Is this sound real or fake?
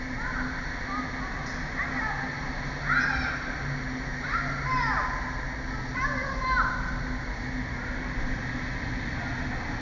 real